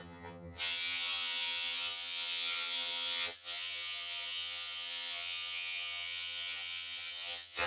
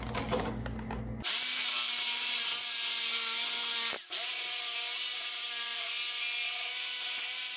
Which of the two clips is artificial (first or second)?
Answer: first